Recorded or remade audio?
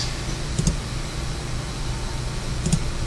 recorded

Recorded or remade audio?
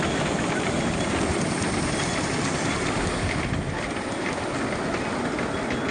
recorded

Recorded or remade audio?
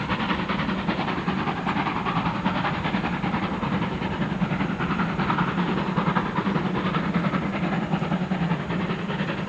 recorded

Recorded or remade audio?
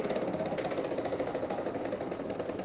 recorded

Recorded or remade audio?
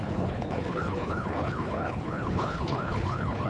remade